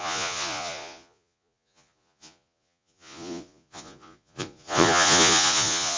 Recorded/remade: remade